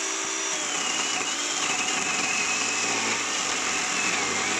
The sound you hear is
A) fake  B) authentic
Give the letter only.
B